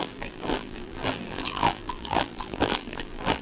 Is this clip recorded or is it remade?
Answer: remade